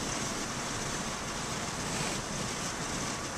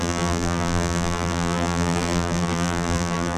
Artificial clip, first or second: second